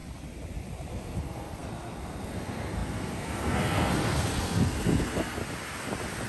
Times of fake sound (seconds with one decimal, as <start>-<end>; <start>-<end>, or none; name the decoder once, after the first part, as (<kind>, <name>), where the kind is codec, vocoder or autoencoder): 0.9-5.4 (codec, SNAC)